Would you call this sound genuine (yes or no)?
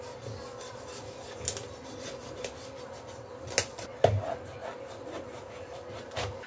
yes